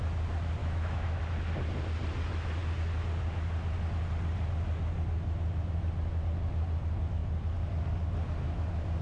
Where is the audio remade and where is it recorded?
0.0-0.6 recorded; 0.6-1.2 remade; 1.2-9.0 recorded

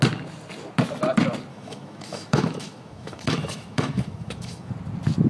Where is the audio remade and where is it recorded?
0.0-1.5 recorded; 1.5-4.7 remade; 4.7-5.3 recorded

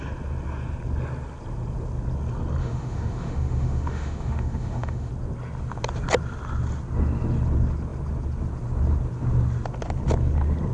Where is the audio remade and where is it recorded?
0.0-2.6 recorded; 2.6-5.1 remade; 5.1-10.7 recorded

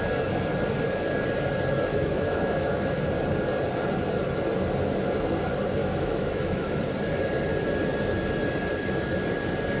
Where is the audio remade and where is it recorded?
0.0-1.9 recorded; 1.9-3.1 remade; 3.1-5.8 recorded; 5.8-6.8 remade; 6.8-9.8 recorded

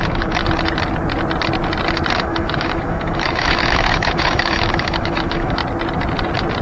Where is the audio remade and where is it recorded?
0.0-0.4 remade; 0.4-2.1 recorded; 2.1-5.6 remade; 5.6-6.6 recorded

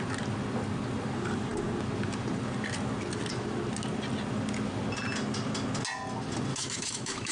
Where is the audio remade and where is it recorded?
0.0-6.5 recorded; 6.5-7.3 remade